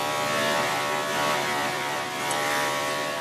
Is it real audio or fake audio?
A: fake